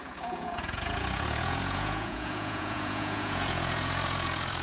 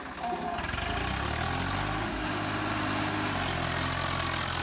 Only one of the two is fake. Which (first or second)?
first